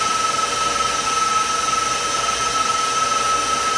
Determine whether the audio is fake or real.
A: real